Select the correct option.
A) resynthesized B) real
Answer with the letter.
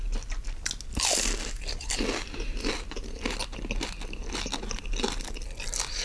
B